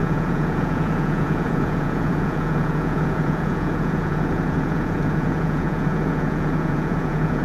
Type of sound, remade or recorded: remade